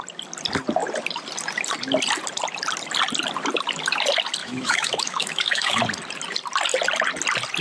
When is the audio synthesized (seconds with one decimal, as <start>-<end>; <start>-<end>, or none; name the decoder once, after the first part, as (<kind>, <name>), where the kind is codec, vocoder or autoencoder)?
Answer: 4.4-5.8 (autoencoder, DAC-VAE)

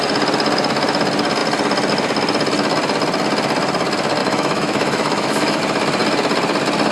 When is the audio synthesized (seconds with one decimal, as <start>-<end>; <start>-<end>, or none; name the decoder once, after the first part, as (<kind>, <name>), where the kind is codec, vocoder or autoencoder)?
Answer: 4.2-5.6 (autoencoder, DAC-VAE)

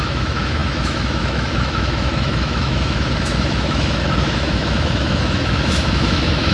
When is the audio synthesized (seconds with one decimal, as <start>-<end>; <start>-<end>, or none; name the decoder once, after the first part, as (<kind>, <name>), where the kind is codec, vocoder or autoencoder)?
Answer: 0.0-6.5 (autoencoder, DAC-VAE)

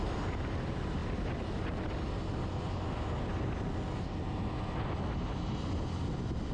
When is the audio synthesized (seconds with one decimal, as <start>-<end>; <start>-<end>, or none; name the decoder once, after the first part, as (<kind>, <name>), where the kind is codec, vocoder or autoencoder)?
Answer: none

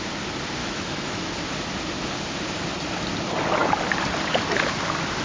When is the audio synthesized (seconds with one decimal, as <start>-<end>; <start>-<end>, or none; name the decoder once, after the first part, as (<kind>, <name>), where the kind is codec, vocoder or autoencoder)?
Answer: 0.6-1.3 (autoencoder, DAC-VAE)

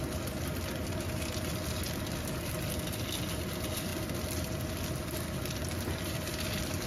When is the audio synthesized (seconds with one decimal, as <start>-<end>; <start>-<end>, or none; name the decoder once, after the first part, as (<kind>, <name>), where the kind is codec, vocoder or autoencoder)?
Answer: none

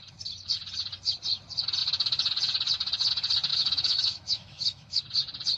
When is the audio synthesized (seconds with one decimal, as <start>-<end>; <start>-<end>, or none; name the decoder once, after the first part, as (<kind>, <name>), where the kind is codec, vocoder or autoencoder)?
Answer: 3.5-5.0 (autoencoder, DAC-VAE)

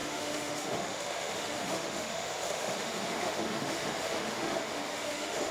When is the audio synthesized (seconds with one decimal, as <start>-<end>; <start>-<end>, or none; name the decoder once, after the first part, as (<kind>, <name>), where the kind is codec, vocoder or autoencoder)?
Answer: 0.0-5.5 (autoencoder, DAC-VAE)